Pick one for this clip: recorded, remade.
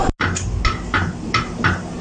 recorded